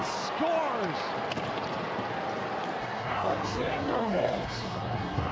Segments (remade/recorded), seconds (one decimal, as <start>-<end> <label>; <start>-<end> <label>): 0.0-2.8 recorded; 2.8-5.3 remade